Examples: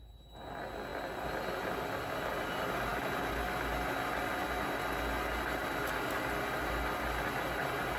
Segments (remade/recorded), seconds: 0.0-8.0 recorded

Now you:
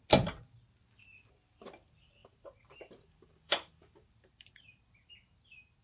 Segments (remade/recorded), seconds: 0.0-2.2 recorded; 2.2-5.1 remade; 5.1-5.8 recorded

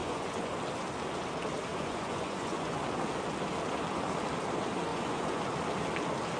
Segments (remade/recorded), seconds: 0.0-0.5 remade; 0.5-1.7 recorded; 1.7-2.8 remade; 2.8-4.9 recorded; 4.9-5.4 remade; 5.4-6.4 recorded